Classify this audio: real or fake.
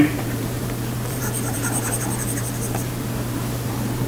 fake